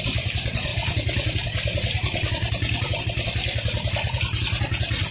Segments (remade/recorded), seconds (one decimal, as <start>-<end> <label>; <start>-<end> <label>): 0.0-5.1 recorded